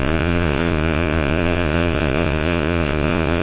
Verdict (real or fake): fake